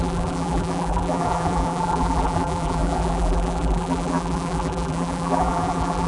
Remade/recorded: remade